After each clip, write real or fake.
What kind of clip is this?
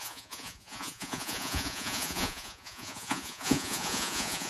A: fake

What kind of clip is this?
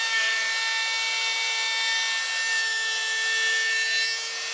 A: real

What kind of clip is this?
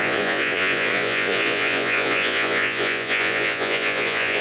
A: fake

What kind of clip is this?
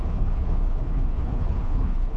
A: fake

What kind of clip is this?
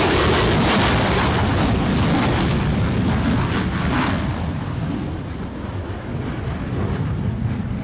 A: real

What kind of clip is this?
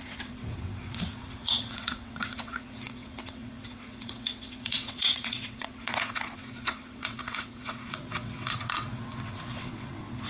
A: fake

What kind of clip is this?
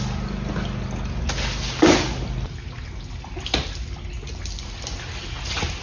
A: real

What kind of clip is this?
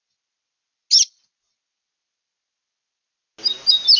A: real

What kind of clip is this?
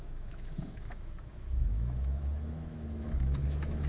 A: fake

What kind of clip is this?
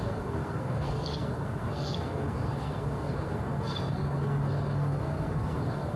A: fake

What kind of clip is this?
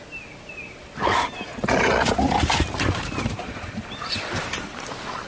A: real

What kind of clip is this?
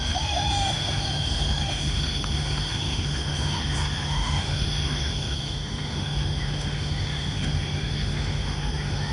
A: fake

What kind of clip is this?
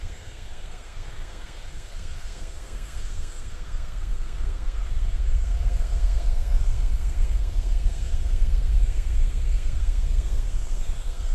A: fake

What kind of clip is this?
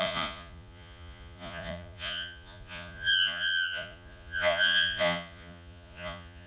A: fake